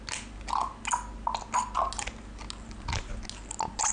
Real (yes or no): yes